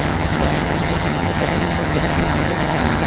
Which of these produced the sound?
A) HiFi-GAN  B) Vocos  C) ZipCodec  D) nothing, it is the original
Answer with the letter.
A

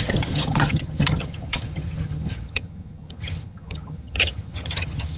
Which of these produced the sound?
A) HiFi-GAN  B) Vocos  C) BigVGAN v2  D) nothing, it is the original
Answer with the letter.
A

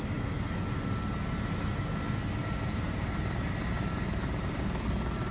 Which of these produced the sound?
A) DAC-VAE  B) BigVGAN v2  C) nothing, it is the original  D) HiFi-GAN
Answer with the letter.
C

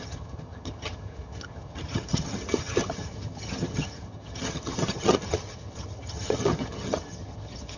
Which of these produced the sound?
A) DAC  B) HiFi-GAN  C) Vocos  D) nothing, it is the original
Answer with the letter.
B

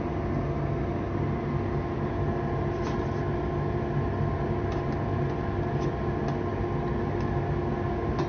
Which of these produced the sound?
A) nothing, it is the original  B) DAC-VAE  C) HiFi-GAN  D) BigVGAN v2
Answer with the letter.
A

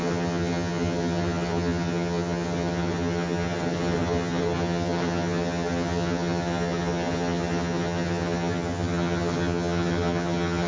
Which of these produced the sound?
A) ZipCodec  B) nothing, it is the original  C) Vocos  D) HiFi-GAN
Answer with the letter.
D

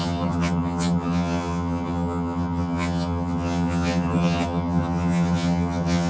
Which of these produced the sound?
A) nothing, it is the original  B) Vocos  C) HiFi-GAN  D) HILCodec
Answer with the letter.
C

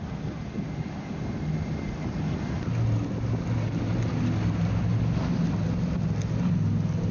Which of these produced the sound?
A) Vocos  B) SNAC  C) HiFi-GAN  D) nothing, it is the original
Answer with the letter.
D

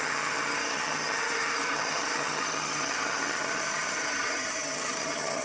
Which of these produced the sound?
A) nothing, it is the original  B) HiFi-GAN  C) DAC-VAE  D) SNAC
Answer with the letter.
B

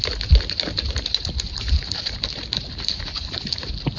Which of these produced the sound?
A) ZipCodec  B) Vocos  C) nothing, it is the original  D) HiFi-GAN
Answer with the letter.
C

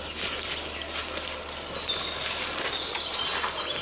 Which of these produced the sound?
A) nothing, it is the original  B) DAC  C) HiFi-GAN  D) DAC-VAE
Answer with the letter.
A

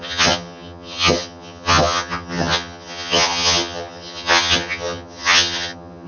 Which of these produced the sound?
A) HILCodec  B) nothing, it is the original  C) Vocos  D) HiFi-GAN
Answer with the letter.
D